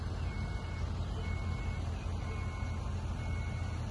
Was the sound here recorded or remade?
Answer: recorded